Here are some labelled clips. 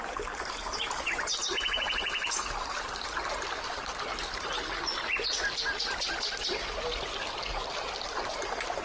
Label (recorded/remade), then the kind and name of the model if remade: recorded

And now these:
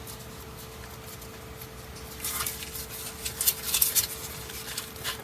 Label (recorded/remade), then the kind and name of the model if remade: recorded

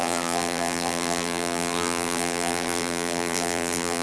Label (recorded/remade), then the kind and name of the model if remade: remade, vocoder, BigVGAN v2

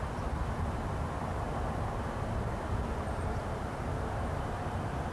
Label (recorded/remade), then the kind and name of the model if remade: recorded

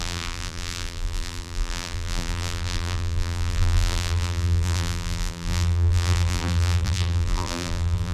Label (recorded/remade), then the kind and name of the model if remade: remade, vocoder, BigVGAN v2